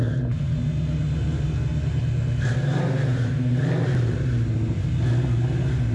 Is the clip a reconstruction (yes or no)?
no